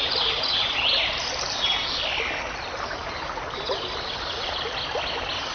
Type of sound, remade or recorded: recorded